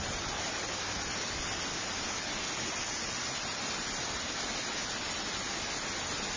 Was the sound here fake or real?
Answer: real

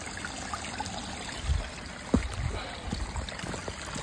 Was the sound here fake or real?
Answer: real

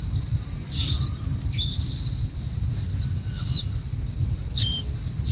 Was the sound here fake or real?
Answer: real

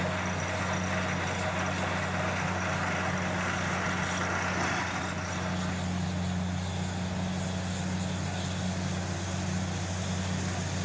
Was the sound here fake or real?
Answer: real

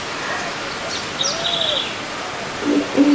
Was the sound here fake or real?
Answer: real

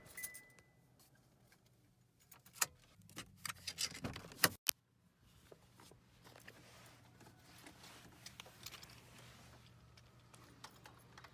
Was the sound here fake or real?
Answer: real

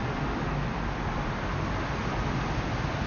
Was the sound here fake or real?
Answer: real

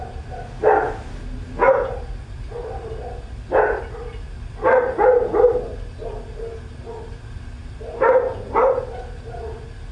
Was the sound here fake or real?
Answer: real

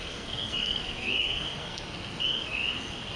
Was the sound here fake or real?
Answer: fake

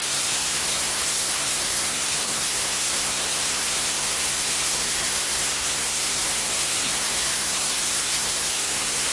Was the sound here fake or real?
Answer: fake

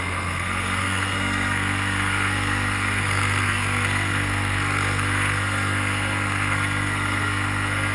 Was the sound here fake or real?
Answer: fake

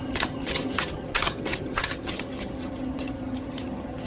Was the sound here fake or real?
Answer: fake